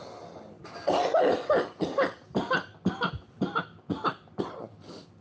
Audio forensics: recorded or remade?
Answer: recorded